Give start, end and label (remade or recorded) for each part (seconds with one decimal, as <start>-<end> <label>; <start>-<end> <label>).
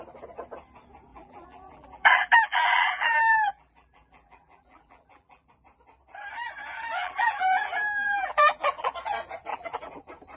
0.0-1.1 recorded; 1.1-5.5 remade; 5.5-7.0 recorded; 7.0-8.9 remade; 8.9-9.5 recorded; 9.5-10.0 remade; 10.0-10.4 recorded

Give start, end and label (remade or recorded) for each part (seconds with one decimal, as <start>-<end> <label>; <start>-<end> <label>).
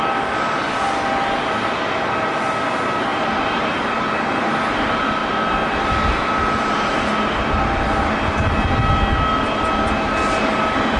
0.0-3.1 recorded; 3.1-4.2 remade; 4.2-11.0 recorded